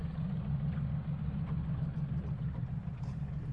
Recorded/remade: recorded